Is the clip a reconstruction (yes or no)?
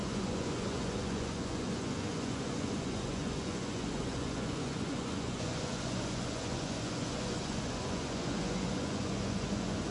yes